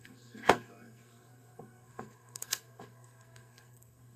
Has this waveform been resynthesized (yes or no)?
yes